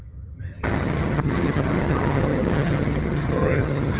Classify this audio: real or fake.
fake